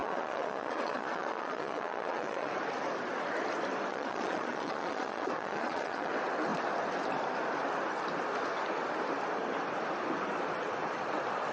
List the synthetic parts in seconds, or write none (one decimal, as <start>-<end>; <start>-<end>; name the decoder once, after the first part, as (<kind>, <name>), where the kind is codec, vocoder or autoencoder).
0.0-2.5 (vocoder, Vocos); 3.9-6.1